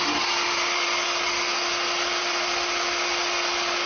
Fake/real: real